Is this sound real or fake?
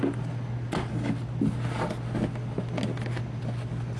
real